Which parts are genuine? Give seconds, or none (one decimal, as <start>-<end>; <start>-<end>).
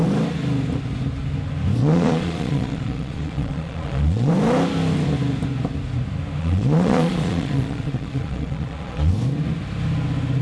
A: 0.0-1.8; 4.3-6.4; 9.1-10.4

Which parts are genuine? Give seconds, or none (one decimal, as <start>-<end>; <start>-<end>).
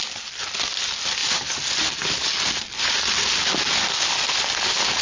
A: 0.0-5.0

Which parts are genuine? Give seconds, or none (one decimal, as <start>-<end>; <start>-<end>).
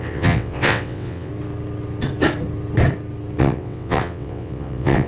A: 1.3-3.4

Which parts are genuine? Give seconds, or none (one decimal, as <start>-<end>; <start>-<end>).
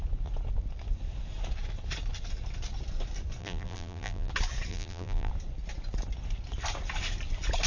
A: 0.0-3.4; 4.3-4.7; 5.3-7.7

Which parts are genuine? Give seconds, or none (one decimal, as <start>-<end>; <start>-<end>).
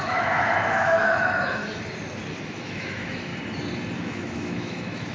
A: 1.6-2.4; 3.3-4.0